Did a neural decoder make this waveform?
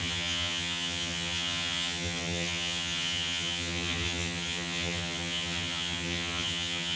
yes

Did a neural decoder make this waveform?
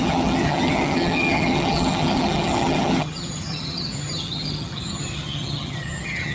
yes